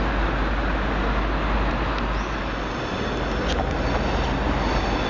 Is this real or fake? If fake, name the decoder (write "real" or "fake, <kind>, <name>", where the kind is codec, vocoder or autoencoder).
real